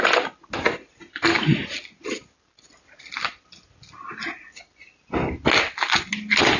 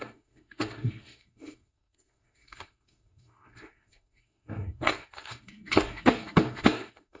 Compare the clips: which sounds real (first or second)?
first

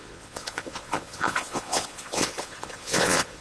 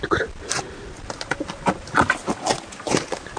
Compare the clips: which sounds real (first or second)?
second